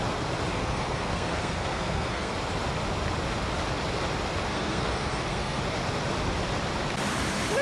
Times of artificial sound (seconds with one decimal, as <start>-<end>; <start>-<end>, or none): 0.5-2.3; 4.5-5.6